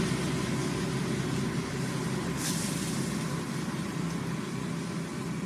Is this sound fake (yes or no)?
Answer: no